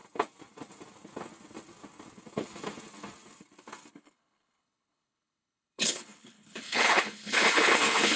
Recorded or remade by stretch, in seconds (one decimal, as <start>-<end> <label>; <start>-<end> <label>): 0.0-3.9 recorded; 3.9-8.2 remade